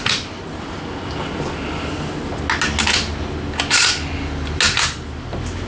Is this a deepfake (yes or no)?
no